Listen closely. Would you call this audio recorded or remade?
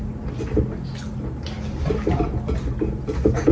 recorded